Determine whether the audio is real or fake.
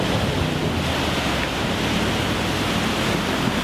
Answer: real